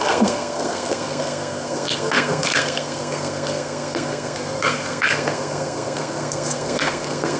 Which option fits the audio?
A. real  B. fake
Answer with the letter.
B